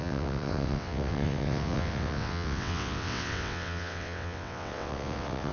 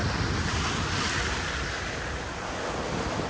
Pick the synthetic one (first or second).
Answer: first